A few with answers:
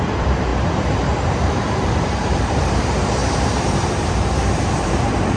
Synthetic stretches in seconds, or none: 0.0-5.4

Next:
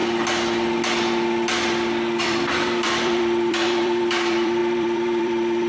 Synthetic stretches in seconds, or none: 2.2-5.7

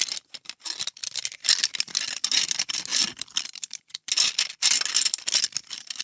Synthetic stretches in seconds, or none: 2.9-4.1

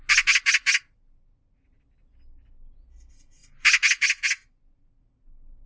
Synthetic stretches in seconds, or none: none